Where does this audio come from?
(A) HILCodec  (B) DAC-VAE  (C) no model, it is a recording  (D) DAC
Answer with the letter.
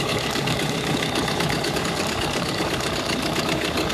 D